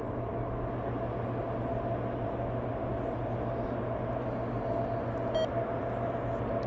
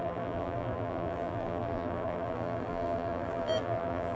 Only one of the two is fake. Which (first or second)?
second